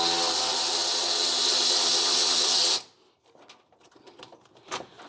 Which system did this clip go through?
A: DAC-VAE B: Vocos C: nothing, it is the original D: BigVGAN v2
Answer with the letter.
C